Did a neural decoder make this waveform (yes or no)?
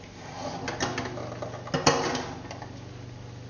no